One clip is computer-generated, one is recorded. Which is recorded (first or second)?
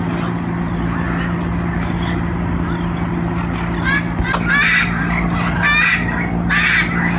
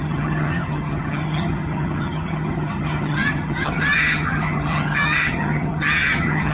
first